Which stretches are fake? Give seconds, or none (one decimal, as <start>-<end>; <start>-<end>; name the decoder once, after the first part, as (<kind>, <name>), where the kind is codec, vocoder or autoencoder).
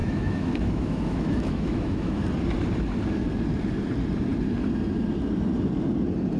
0.0-2.2 (autoencoder, DAC-VAE)